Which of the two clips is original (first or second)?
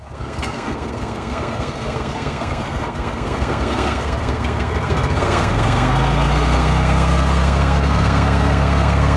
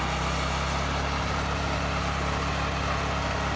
second